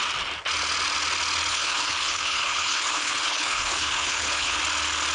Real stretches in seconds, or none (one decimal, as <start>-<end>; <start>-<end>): 0.0-1.5; 4.6-5.1